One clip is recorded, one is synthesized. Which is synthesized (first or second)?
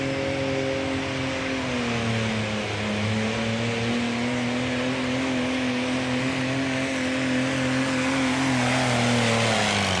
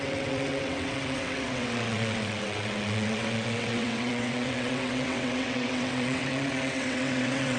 second